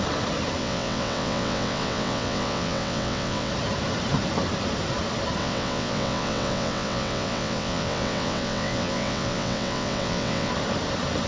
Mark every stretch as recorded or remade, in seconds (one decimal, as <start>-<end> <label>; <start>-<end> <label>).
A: 0.0-0.6 recorded; 0.6-3.5 remade; 3.5-5.4 recorded; 5.4-10.5 remade; 10.5-11.3 recorded